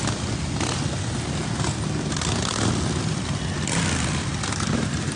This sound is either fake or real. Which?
real